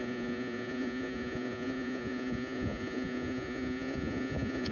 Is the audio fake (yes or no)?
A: yes